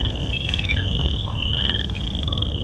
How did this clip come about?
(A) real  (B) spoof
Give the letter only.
B